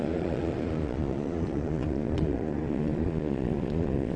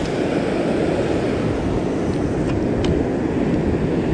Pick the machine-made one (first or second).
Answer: first